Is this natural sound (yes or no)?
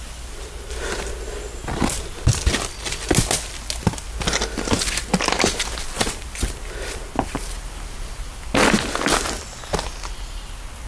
yes